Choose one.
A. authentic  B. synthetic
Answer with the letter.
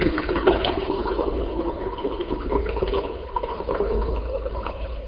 B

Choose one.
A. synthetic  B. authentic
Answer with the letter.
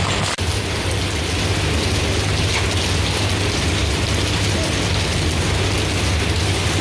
B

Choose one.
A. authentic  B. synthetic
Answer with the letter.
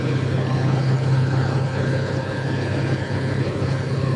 B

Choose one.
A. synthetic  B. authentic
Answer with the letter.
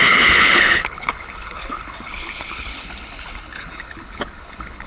A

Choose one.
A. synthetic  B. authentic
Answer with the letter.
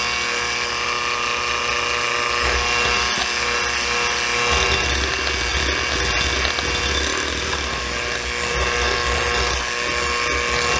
B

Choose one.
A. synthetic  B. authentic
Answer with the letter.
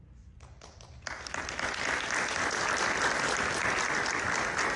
B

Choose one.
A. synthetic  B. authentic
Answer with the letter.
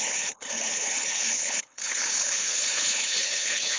A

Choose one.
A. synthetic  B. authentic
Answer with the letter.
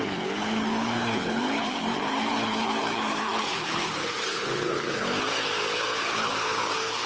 A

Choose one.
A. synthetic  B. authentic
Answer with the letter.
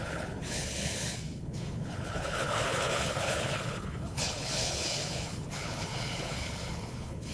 A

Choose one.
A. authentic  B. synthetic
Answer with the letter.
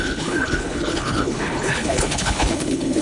B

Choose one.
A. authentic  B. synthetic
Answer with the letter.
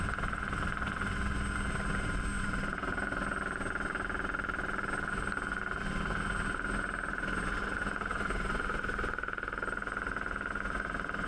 A